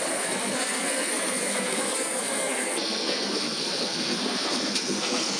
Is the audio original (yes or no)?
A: no